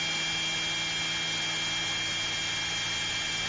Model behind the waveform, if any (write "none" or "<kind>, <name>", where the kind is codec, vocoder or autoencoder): none